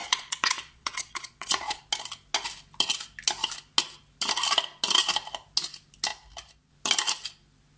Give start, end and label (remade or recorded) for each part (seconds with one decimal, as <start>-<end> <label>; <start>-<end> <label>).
0.0-1.8 remade; 1.8-7.8 recorded